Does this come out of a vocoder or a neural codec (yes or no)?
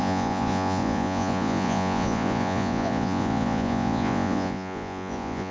yes